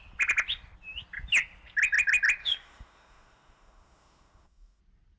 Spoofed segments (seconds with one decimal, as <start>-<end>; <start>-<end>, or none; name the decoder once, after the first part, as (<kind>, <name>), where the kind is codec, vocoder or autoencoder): 2.4-4.8 (autoencoder, DAC-VAE)

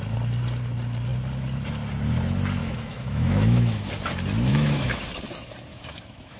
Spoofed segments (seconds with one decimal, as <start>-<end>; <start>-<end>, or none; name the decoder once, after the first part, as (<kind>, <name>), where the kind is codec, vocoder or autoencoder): 2.6-3.9 (autoencoder, DAC-VAE); 4.5-5.1; 5.7-6.4

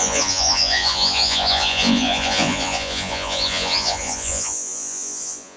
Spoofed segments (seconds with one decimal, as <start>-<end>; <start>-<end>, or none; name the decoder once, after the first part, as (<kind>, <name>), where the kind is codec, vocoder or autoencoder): 0.0-5.6 (vocoder, Vocos)

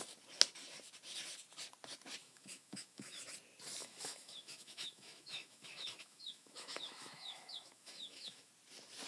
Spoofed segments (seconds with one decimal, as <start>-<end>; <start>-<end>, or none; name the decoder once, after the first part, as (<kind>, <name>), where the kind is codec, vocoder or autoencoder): 2.2-3.2 (autoencoder, DAC-VAE); 3.8-8.5

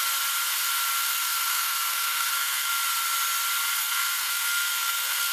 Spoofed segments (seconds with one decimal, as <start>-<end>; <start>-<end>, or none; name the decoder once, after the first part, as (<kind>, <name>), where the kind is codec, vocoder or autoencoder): 1.0-2.7 (codec, SNAC); 3.7-5.3